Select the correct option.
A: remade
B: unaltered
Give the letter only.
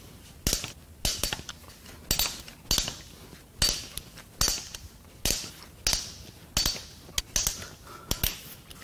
B